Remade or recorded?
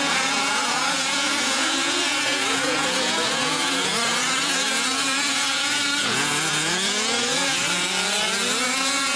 remade